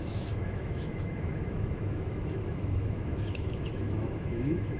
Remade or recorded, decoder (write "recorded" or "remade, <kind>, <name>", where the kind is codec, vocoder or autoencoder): remade, autoencoder, DAC-VAE